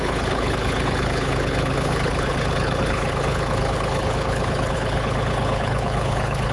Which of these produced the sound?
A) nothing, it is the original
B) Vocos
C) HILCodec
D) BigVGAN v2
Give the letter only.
C